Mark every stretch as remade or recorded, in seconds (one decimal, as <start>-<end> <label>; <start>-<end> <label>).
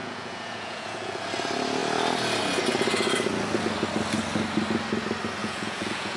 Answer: 0.0-1.2 remade; 1.2-5.4 recorded; 5.4-6.2 remade